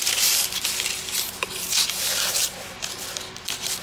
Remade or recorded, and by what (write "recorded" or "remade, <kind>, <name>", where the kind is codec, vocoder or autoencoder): recorded